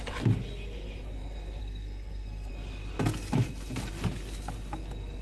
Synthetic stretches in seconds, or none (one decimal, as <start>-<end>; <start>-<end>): 1.6-2.5